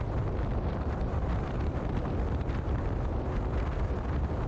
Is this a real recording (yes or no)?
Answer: no